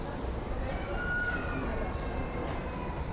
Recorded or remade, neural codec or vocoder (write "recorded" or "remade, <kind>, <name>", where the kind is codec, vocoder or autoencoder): recorded